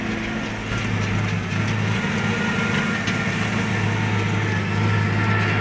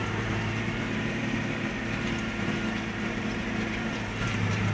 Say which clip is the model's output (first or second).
second